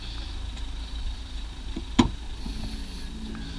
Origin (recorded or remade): recorded